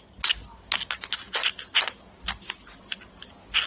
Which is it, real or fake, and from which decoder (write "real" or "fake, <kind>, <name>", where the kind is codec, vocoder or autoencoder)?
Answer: real